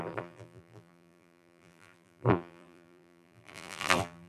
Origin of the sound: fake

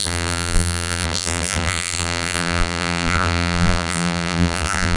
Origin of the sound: fake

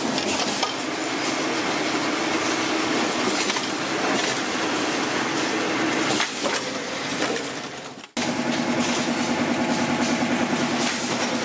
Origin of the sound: real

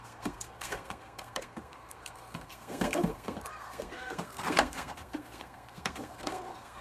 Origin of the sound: fake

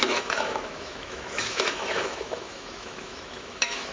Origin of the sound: fake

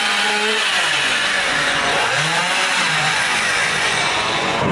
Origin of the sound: fake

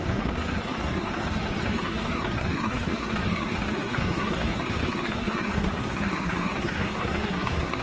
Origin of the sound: fake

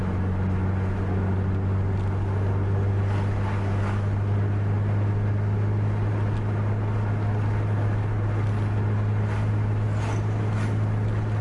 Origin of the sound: real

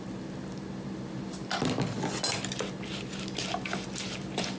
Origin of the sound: real